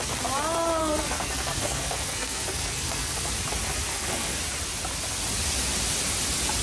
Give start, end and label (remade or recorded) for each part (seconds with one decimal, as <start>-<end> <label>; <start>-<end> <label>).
0.0-0.8 recorded; 0.8-3.3 remade; 3.3-3.9 recorded; 3.9-4.4 remade; 4.4-6.6 recorded